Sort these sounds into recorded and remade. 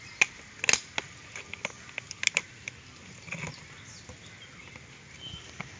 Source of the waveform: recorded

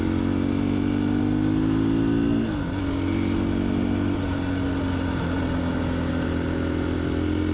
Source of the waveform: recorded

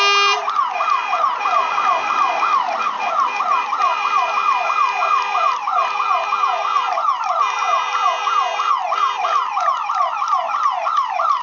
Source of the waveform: recorded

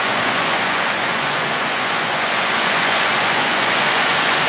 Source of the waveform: remade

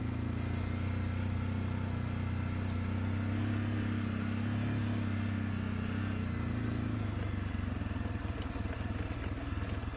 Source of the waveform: recorded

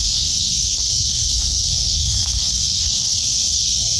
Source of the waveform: remade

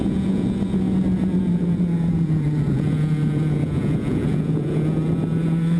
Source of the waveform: remade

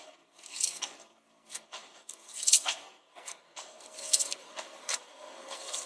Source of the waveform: remade